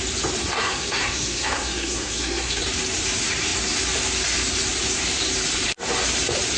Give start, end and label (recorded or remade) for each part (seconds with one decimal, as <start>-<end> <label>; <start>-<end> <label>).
0.0-0.4 recorded; 0.4-2.6 remade; 2.6-6.6 recorded